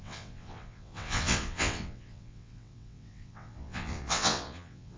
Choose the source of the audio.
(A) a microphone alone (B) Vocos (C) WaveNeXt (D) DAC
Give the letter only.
C